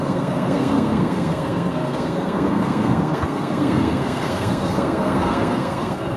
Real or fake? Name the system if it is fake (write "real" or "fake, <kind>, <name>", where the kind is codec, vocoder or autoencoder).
fake, codec, SNAC